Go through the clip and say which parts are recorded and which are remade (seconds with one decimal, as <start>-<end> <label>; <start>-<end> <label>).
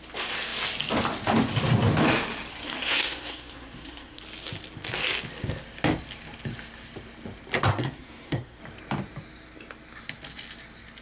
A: 0.0-2.5 recorded; 2.5-4.2 remade; 4.2-7.7 recorded; 7.7-8.6 remade; 8.6-11.0 recorded